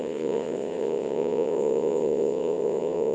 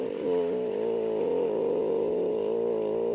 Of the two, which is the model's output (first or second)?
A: first